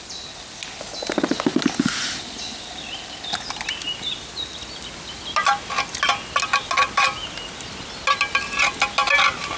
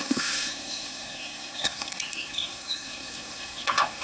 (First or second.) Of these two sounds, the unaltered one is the first